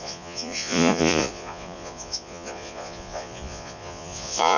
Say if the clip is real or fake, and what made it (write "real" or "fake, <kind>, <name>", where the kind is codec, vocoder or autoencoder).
fake, vocoder, Vocos